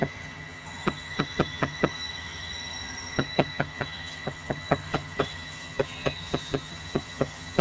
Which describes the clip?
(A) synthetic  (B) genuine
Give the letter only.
A